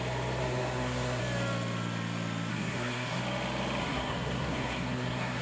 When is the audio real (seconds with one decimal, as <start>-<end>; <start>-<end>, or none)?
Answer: 0.0-0.4; 1.2-2.5; 3.2-3.8

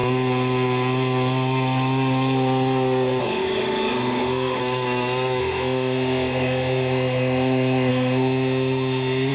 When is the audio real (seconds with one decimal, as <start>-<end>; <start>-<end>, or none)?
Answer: 0.0-3.2; 4.6-5.4